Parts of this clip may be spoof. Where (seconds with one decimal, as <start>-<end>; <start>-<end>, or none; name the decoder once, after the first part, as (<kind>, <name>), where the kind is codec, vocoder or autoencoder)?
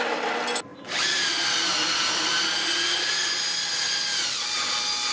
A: none